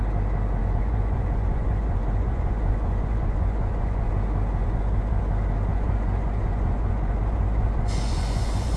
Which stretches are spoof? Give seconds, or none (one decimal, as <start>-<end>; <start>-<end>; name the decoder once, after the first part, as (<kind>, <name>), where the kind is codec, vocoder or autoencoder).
0.6-4.1 (vocoder, Vocos); 4.6-5.2; 5.7-8.8